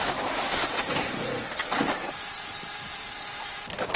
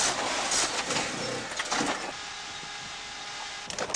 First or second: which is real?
second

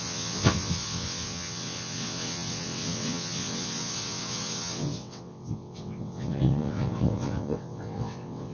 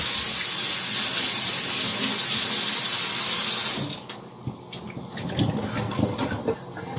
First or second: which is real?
second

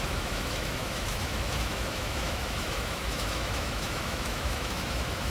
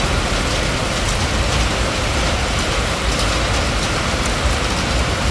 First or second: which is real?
second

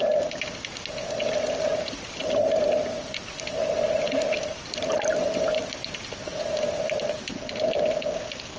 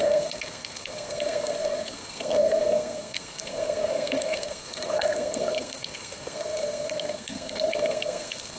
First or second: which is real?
first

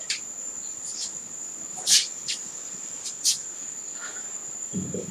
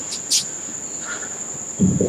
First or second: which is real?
second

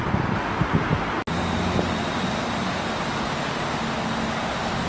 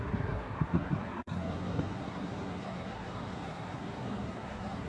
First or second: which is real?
first